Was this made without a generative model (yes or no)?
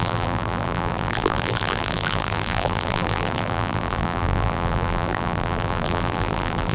no